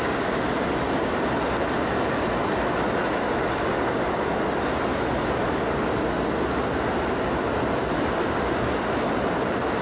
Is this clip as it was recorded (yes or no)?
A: yes